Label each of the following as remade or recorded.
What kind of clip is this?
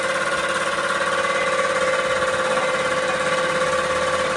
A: recorded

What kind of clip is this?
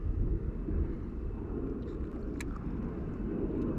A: recorded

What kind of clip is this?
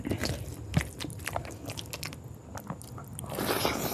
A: recorded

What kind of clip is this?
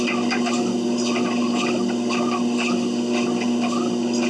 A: recorded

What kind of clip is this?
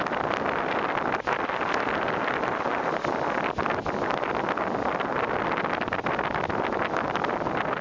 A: recorded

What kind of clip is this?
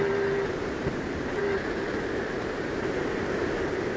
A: remade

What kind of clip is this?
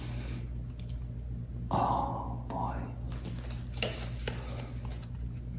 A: recorded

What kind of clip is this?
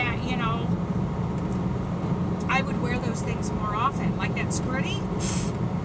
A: recorded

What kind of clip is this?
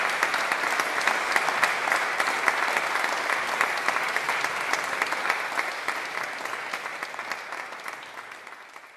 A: recorded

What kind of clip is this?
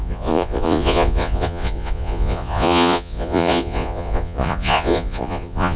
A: remade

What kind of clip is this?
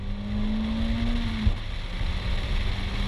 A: recorded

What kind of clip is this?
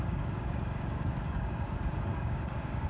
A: remade